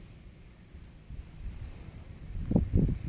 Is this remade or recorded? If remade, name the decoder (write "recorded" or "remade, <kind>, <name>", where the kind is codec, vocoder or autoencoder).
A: remade, vocoder, BigVGAN v2